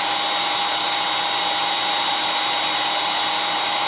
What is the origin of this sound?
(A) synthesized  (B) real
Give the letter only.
B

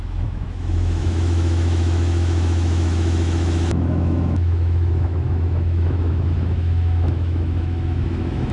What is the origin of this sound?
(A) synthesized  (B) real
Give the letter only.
A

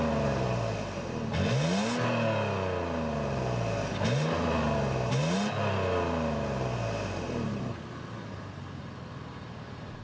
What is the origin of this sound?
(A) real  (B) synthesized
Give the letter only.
A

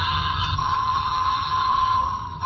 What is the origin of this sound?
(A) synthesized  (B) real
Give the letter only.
A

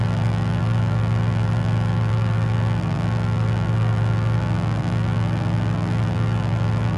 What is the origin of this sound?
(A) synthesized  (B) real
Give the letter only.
A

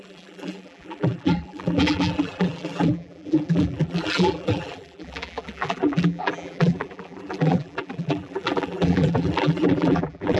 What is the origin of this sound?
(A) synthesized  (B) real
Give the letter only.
A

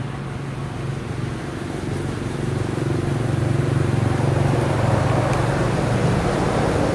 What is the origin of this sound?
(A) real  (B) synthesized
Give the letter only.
A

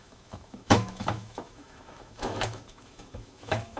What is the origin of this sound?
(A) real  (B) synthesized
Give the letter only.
B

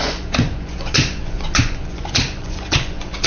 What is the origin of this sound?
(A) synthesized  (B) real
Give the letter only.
A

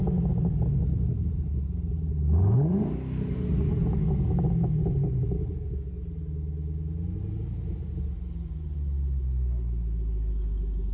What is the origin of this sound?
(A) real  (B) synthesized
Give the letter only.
A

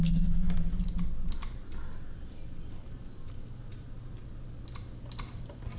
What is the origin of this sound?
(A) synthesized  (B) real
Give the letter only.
B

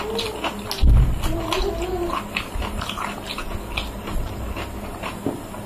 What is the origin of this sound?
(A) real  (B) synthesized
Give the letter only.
A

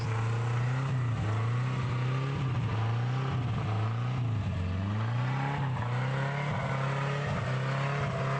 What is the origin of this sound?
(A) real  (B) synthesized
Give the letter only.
A